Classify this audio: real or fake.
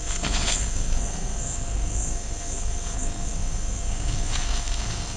fake